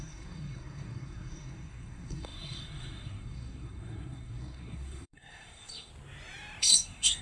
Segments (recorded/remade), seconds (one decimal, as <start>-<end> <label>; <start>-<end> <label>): 0.0-5.9 remade; 5.9-6.6 recorded; 6.6-7.2 remade